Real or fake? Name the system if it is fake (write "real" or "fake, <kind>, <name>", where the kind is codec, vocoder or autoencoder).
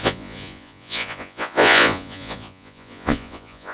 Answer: fake, vocoder, Vocos